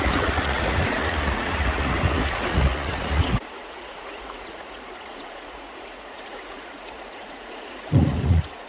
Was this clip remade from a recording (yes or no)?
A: yes